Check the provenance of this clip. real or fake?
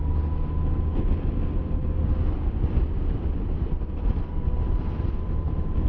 real